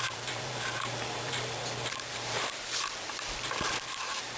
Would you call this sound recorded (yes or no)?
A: no